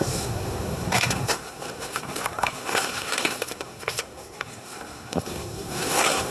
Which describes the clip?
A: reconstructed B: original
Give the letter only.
A